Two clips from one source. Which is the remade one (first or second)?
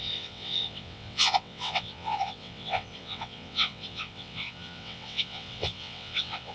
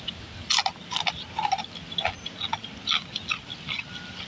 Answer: first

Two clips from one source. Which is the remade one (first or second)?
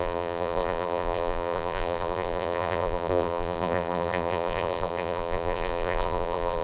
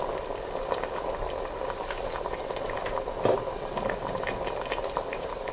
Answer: first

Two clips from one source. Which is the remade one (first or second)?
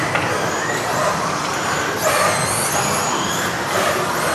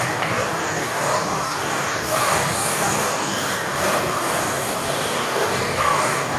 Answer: second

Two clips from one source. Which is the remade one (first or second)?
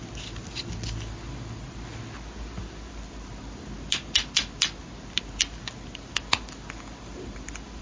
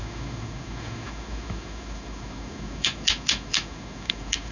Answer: second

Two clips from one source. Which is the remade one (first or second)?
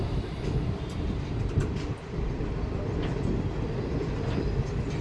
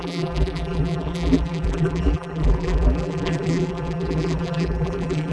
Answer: second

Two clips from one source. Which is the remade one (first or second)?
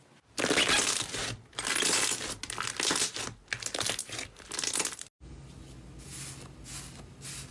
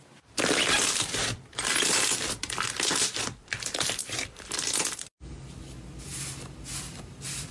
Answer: second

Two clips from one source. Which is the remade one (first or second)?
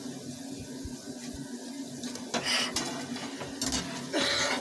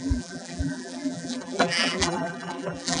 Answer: second